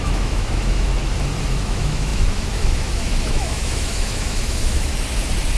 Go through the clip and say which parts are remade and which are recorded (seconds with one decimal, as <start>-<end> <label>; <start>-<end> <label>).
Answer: 0.0-0.9 remade; 0.9-1.5 recorded; 1.5-4.9 remade; 4.9-5.6 recorded